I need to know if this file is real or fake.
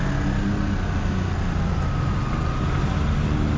real